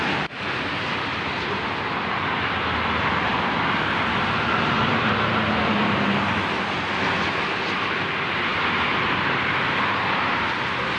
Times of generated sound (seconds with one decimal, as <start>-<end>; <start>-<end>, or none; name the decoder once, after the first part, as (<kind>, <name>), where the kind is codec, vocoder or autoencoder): 1.1-1.7 (vocoder, BigVGAN v2); 3.3-5.0; 8.5-9.8